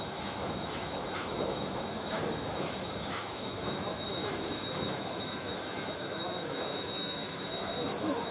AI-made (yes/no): yes